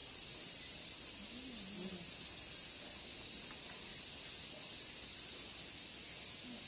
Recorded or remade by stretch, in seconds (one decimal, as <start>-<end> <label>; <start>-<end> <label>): 0.0-6.7 recorded